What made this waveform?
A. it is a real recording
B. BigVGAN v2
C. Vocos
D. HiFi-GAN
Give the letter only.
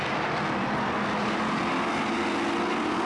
A